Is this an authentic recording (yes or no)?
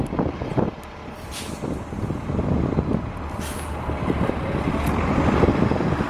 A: yes